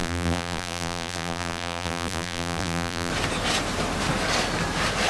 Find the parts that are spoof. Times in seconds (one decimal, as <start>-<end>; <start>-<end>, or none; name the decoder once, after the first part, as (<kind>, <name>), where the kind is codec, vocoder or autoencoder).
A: 0.0-3.1 (vocoder, BigVGAN v2)